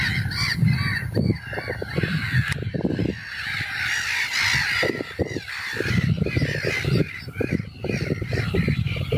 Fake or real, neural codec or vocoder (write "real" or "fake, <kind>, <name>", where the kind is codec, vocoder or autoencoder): real